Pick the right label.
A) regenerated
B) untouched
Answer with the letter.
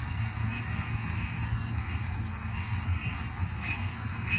A